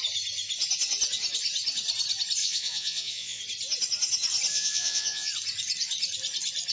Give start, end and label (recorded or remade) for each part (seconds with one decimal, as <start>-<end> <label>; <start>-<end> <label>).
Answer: 0.0-2.4 recorded; 2.4-3.4 remade; 3.4-4.5 recorded; 4.5-5.3 remade; 5.3-6.7 recorded